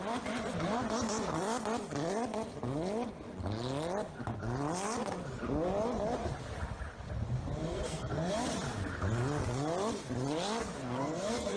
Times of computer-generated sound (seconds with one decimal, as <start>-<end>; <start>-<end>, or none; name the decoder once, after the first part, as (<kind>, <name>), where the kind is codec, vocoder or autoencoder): 7.6-8.3 (codec, SNAC); 10.8-11.6

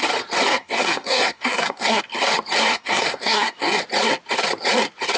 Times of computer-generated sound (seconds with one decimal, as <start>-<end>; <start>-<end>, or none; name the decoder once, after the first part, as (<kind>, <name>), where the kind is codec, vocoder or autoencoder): 0.5-2.0 (codec, SNAC); 2.7-3.8

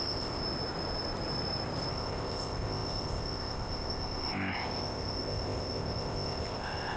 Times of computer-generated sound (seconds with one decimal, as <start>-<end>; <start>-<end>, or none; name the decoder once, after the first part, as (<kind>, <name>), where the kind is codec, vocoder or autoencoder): 0.0-0.4 (codec, ZipCodec); 1.9-7.0

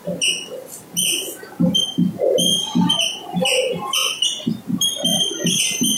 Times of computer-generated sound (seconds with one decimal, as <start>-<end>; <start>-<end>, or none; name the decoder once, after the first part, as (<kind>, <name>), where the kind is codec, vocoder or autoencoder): none

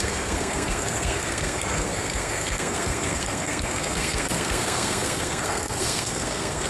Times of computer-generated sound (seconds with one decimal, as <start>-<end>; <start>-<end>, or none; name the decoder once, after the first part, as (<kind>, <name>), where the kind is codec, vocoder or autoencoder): 0.0-6.7 (codec, SNAC)